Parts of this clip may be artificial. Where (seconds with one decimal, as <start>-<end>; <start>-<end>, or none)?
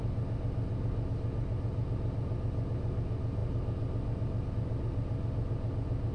none